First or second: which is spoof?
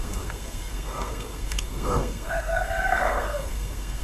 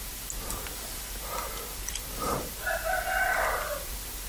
first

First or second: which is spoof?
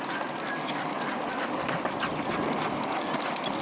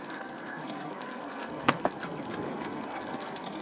second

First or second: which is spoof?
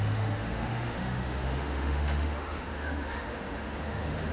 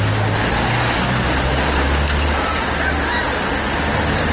first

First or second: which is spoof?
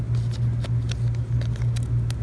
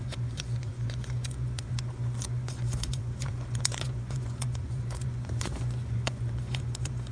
second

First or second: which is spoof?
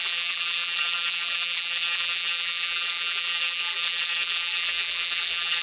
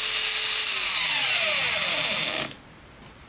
first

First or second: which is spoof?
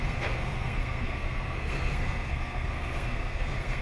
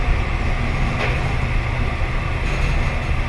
first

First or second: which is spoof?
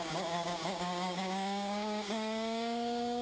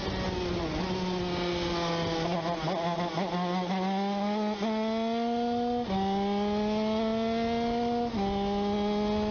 first